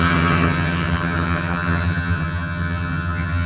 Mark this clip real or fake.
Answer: fake